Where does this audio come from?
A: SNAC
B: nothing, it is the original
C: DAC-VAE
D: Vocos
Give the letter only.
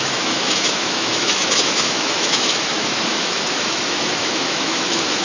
C